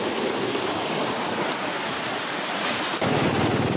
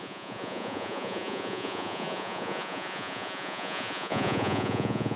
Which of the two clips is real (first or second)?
first